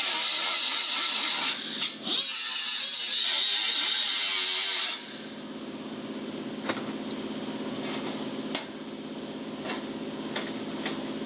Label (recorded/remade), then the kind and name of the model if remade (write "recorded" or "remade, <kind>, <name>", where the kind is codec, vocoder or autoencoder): recorded